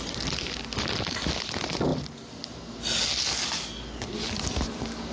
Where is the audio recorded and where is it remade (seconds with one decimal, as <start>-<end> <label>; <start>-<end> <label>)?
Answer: 0.0-5.1 recorded